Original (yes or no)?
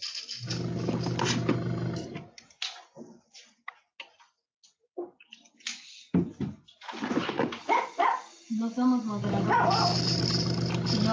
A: yes